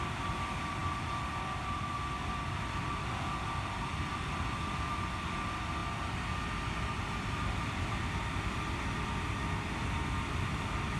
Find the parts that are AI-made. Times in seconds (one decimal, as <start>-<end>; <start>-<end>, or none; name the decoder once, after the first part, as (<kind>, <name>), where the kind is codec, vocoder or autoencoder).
0.0-5.8 (vocoder, BigVGAN v2); 7.3-11.0